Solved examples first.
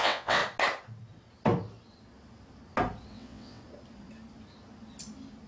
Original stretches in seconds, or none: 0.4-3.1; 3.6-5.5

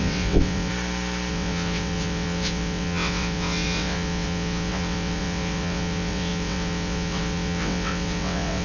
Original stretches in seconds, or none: 0.7-1.3